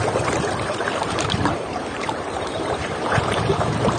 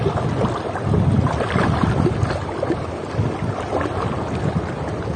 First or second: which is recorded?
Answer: second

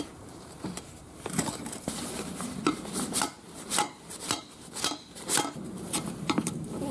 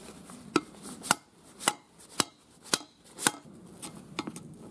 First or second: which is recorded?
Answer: second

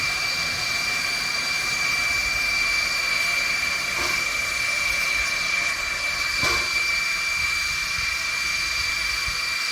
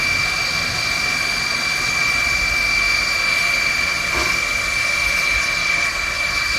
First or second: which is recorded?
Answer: second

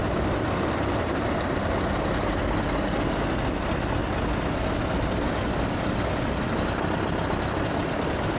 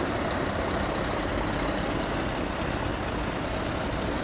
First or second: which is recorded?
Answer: first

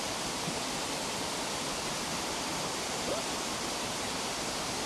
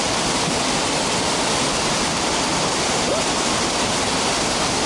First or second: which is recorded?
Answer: second